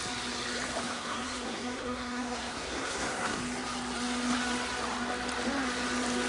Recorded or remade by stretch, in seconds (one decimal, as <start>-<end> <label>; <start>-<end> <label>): 0.0-0.8 recorded; 0.8-3.4 remade; 3.4-6.3 recorded